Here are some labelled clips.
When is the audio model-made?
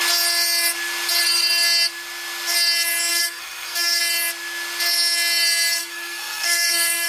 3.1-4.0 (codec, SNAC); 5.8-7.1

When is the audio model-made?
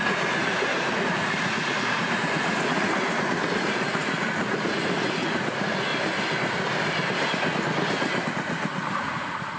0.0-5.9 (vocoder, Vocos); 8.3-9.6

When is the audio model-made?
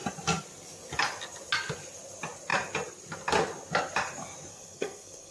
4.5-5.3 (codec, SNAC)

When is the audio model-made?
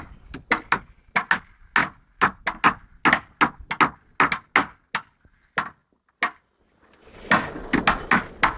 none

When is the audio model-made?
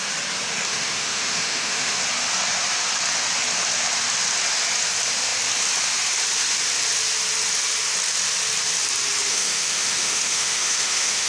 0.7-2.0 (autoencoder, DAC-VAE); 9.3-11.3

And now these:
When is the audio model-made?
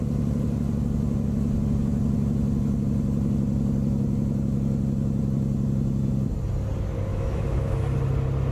7.1-7.8 (autoencoder, DAC-VAE)